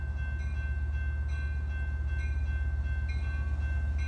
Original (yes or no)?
yes